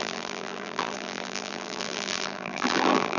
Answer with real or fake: fake